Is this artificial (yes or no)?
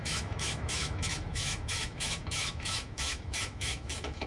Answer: yes